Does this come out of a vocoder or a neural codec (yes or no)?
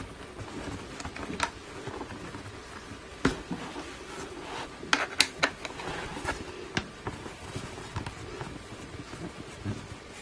no